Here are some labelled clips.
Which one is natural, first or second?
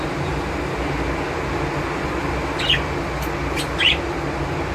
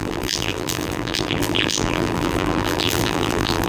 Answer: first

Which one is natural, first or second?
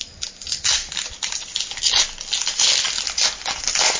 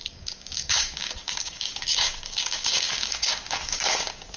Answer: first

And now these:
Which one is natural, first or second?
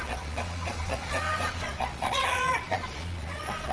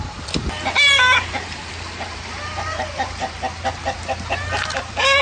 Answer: second